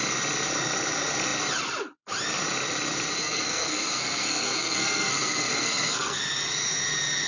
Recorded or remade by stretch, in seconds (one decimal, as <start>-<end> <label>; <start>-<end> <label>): 0.0-3.2 recorded; 3.2-6.2 remade; 6.2-7.3 recorded